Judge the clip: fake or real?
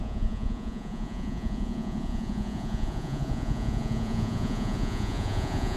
fake